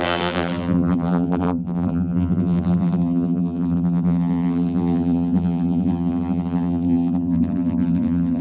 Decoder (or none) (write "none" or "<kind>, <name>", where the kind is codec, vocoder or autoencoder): vocoder, BigVGAN v2